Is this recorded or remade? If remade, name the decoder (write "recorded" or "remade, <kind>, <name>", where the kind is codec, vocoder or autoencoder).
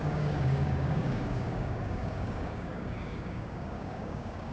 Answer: remade, codec, DAC